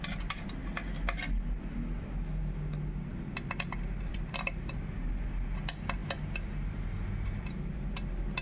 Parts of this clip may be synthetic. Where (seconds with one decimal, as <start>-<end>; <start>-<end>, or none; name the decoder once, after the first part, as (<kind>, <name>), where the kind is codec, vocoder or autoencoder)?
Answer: 4.1-5.1 (vocoder, BigVGAN v2)